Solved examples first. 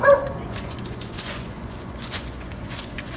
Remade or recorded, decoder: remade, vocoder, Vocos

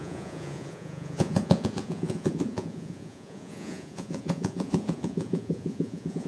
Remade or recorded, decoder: remade, vocoder, Vocos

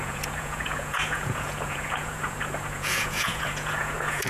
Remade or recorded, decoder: remade, vocoder, Vocos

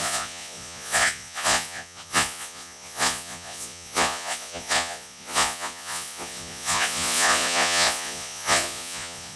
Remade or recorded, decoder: remade, vocoder, Vocos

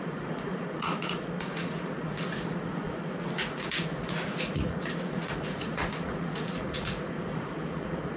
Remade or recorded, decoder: remade, vocoder, Vocos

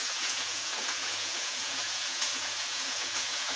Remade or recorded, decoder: remade, vocoder, Vocos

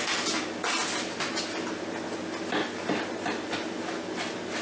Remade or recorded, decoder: recorded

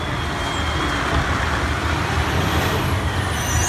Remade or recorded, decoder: recorded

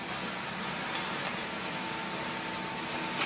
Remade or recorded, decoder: recorded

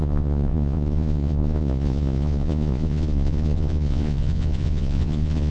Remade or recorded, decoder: remade, vocoder, Vocos